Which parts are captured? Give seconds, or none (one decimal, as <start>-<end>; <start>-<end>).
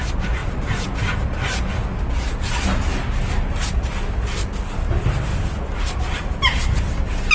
0.0-7.3